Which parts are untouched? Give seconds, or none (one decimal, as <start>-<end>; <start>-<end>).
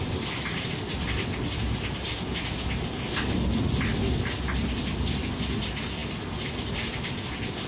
0.0-7.7